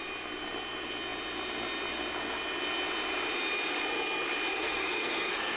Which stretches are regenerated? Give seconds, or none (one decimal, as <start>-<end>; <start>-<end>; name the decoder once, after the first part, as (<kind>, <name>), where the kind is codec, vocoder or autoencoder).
4.5-5.6 (codec, SNAC)